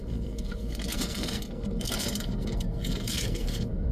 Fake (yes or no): yes